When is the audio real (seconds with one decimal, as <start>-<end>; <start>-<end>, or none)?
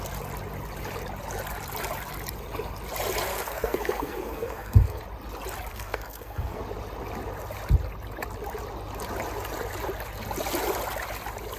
0.0-3.3; 5.0-5.7; 6.6-11.6